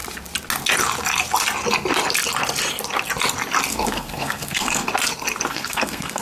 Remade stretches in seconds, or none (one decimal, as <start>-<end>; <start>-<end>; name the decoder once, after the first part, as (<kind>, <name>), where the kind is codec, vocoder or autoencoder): 3.7-4.9 (codec, SNAC); 5.5-6.2